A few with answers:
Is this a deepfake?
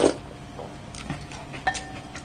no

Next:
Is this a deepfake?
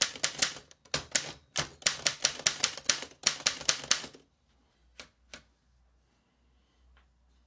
no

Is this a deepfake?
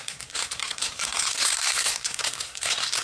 yes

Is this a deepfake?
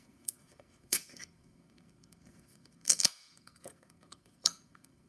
yes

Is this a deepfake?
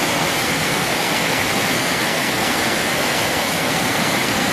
yes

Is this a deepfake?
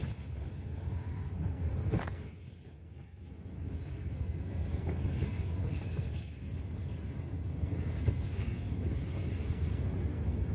yes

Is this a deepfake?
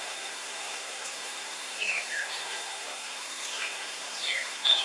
yes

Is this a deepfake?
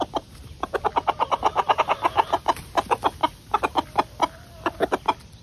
no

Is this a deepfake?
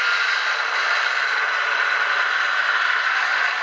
no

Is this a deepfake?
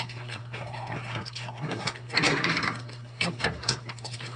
yes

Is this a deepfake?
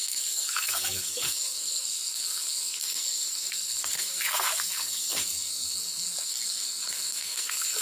yes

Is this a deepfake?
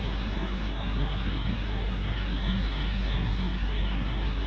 yes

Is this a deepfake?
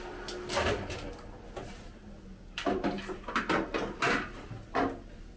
no